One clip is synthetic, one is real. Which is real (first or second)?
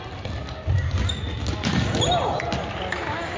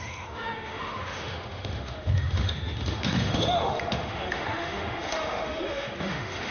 first